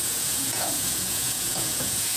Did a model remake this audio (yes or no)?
yes